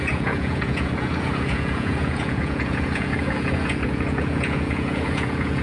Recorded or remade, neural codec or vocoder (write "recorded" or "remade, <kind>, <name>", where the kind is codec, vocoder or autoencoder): remade, vocoder, Vocos